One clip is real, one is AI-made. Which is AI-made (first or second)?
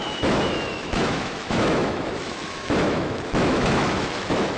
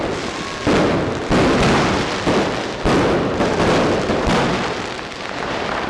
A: first